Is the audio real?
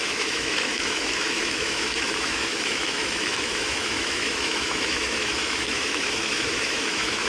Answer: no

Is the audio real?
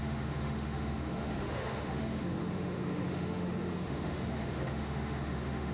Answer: no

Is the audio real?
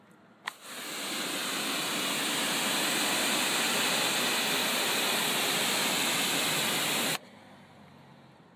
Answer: yes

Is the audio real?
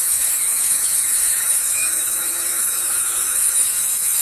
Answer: no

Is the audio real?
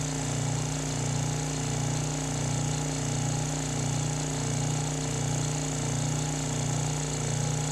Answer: yes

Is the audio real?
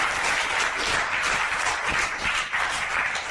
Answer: yes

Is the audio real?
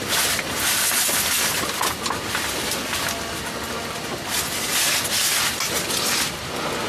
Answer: yes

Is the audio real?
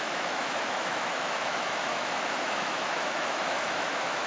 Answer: no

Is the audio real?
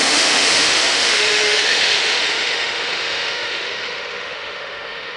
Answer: no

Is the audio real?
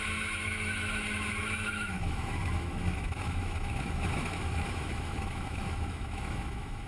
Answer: no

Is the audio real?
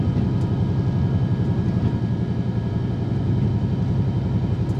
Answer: yes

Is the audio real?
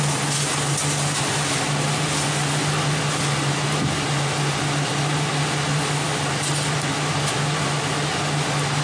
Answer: yes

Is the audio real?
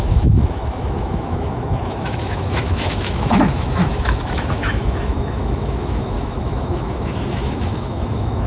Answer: no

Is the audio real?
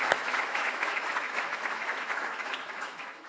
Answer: no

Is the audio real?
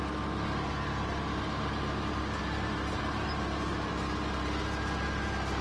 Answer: yes